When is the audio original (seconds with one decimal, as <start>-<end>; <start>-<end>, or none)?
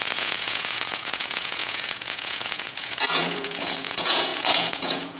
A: none